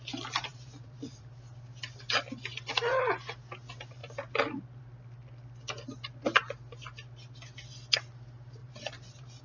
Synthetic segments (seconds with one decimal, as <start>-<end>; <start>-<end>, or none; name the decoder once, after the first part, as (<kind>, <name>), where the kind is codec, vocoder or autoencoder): 0.4-1.3 (vocoder, BigVGAN v2); 4.0-4.8; 8.6-9.4